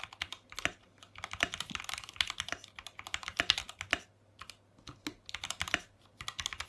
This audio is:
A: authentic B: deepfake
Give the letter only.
A